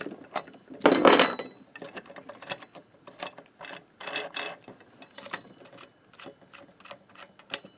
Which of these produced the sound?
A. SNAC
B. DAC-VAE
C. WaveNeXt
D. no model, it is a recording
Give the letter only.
D